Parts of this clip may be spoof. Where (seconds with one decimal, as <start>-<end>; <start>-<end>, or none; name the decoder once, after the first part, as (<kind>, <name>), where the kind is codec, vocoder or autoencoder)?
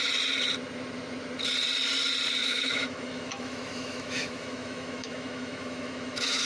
2.4-6.4 (autoencoder, DAC-VAE)